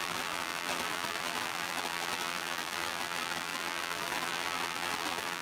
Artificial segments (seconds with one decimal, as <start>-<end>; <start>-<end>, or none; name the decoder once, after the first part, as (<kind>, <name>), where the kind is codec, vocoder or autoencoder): 0.0-5.4 (vocoder, BigVGAN v2)